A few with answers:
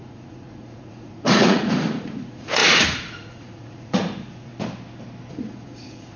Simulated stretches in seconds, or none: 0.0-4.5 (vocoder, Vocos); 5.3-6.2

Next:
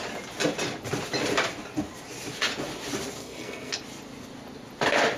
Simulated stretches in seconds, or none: 3.2-3.8 (codec, SNAC)

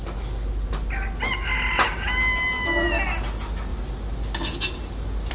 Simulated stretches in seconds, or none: none

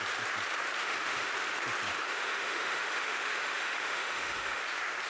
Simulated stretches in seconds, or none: 0.8-1.3 (autoencoder, DAC-VAE); 1.9-4.6

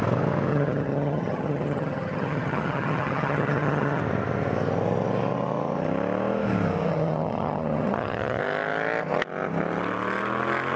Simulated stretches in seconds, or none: 0.5-4.0 (vocoder, HiFi-GAN); 6.9-8.4

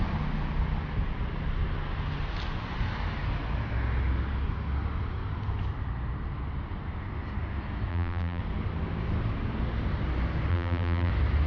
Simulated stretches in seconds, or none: 7.9-8.4 (vocoder, BigVGAN v2); 10.5-11.1

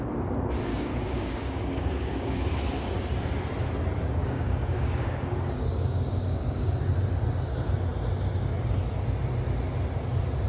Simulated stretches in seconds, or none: 0.7-2.4 (codec, DAC); 4.2-6.9